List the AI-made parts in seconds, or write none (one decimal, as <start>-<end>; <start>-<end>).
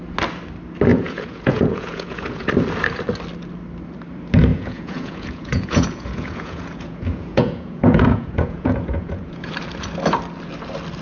0.9-2.5; 4.5-9.5